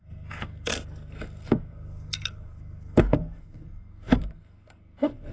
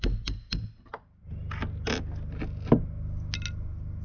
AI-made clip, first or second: first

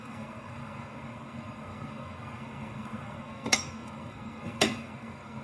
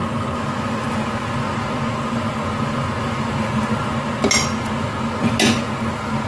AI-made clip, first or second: first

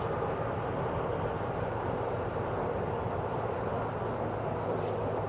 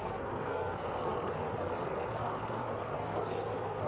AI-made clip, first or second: second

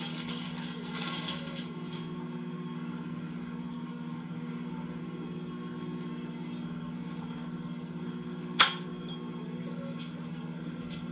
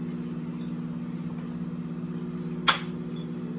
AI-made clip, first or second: first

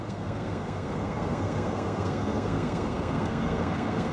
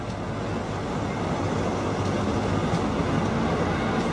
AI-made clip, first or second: first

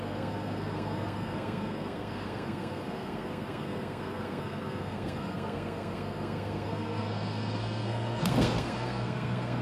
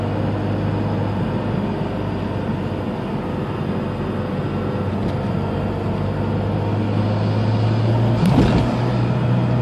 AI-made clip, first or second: first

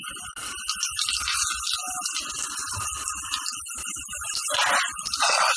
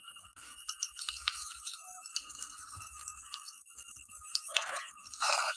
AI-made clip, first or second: second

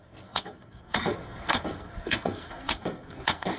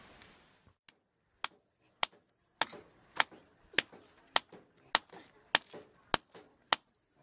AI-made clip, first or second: first